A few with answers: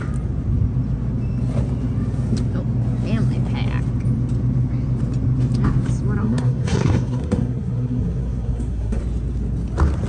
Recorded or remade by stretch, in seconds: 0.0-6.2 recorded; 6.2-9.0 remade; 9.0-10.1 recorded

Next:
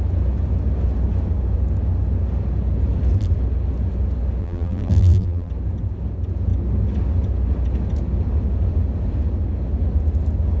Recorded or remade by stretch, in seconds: 0.0-4.4 recorded; 4.4-5.5 remade; 5.5-10.6 recorded